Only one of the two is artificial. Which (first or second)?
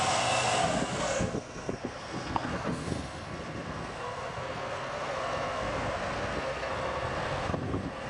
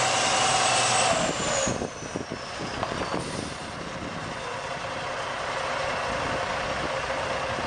first